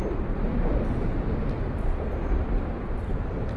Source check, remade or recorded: recorded